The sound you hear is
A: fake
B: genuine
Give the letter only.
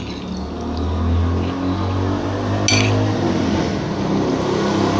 B